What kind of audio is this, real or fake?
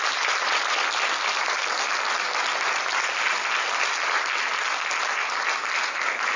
real